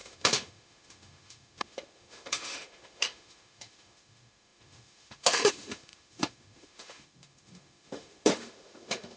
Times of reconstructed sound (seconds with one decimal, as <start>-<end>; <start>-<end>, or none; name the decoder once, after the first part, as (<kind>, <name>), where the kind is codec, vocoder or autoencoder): 0.0-9.2 (autoencoder, DAC-VAE)